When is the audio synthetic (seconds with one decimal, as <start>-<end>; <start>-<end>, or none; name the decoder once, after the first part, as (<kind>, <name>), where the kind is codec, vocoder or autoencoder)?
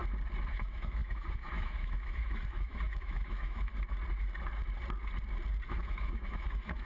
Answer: 0.5-3.7 (autoencoder, DAC-VAE); 5.7-6.8